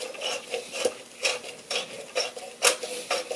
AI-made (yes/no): no